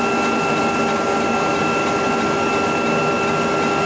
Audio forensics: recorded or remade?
recorded